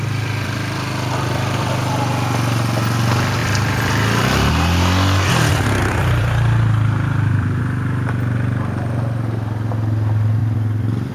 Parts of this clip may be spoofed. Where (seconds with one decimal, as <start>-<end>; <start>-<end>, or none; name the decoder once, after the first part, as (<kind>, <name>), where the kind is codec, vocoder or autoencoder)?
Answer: 0.0-2.1 (vocoder, BigVGAN v2); 3.4-4.5; 5.8-7.6; 10.4-11.1